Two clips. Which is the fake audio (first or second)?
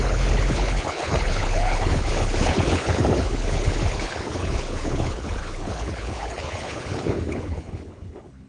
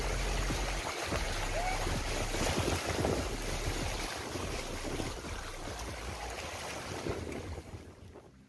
first